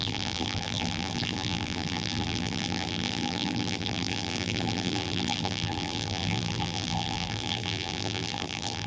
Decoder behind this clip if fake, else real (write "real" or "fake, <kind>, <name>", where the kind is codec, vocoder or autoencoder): fake, vocoder, BigVGAN v2